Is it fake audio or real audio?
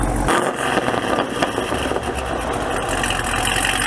real